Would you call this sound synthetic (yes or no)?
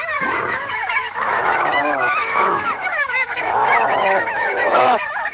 yes